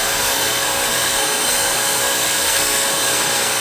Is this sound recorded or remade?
remade